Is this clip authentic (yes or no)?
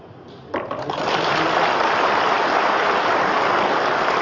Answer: yes